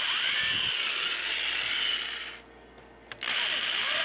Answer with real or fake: real